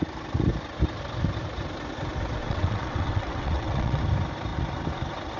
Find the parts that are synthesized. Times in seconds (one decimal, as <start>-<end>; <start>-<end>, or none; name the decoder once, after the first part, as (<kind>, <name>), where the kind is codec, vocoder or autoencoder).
2.4-4.0 (vocoder, WaveNeXt)